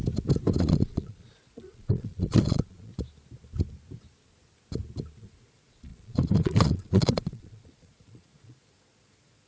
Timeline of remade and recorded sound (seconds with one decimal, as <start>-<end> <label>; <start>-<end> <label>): 0.0-0.6 recorded; 0.6-2.9 remade; 2.9-5.2 recorded; 5.2-9.5 remade